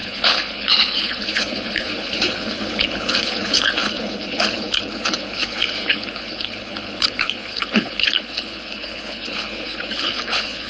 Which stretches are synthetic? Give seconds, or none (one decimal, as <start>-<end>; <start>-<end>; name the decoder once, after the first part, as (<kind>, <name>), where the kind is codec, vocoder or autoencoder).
0.0-10.7 (codec, HILCodec)